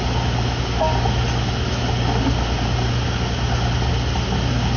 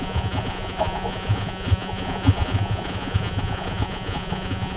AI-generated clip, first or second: second